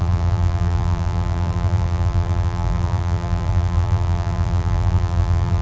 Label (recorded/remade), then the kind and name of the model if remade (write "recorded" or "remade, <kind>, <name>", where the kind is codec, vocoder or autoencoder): remade, vocoder, BigVGAN v2